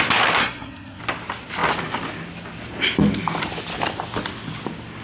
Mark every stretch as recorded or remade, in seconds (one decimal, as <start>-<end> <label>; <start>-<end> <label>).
0.0-0.4 recorded; 0.4-1.0 remade; 1.0-5.0 recorded